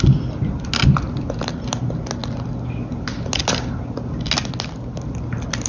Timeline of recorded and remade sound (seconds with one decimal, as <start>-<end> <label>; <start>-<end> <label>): 0.0-5.7 recorded